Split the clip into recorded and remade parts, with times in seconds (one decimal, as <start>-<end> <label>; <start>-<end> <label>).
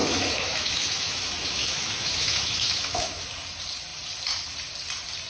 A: 0.0-3.2 remade; 3.2-5.3 recorded